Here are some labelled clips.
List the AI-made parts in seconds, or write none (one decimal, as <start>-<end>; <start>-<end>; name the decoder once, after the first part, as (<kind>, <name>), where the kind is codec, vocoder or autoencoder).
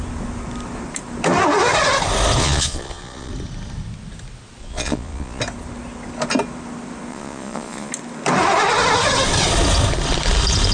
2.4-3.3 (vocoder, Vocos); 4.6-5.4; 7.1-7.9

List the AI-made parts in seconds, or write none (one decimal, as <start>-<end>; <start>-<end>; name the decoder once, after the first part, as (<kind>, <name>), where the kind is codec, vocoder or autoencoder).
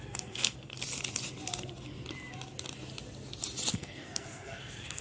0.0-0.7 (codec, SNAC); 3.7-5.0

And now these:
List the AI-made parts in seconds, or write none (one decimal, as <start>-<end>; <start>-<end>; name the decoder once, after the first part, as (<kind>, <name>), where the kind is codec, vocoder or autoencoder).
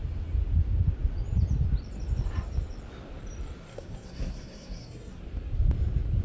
3.7-5.2 (codec, SNAC)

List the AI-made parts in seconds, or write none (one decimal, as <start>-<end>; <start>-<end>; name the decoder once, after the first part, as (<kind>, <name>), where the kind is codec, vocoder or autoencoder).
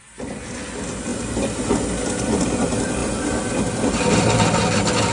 none